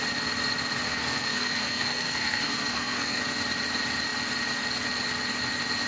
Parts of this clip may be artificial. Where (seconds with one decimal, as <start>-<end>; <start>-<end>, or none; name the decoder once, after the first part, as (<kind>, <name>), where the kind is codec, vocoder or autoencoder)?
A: 0.8-3.2 (codec, SNAC)